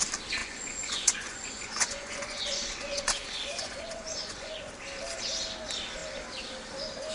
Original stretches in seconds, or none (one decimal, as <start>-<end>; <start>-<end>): 0.0-0.4; 4.7-7.1